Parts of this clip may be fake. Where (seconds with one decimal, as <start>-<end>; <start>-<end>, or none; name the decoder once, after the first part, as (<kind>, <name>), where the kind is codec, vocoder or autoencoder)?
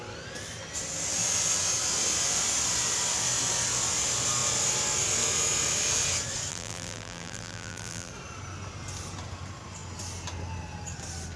6.5-8.1 (vocoder, BigVGAN v2)